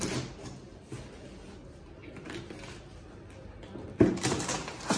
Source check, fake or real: real